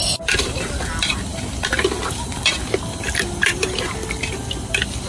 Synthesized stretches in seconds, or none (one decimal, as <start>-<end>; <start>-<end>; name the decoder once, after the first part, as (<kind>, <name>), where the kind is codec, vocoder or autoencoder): none